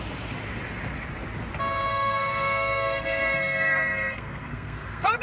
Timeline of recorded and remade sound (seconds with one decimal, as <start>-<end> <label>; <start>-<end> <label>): 0.0-1.9 recorded; 1.9-5.2 remade